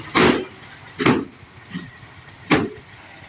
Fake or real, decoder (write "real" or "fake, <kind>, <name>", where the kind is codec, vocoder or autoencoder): real